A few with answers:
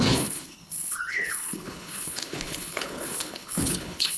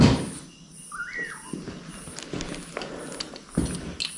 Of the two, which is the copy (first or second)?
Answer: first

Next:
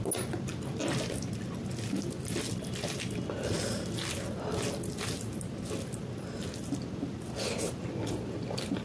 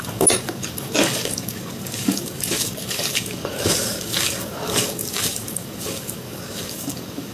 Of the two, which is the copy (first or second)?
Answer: second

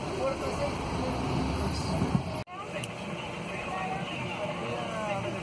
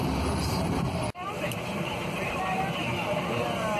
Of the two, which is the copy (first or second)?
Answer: second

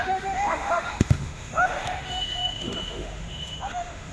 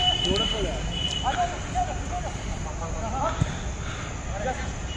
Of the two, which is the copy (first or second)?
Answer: first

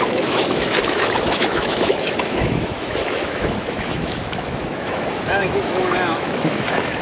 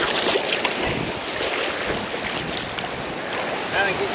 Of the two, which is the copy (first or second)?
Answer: first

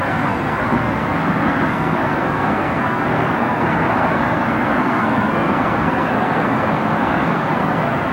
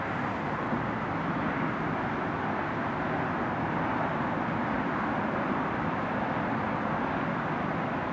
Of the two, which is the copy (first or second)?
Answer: first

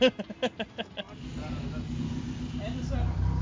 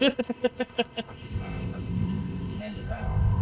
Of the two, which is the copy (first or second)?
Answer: second